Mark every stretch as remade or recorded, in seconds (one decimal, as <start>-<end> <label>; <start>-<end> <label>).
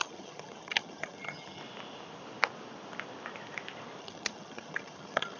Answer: 0.0-1.6 remade; 1.6-4.0 recorded; 4.0-5.4 remade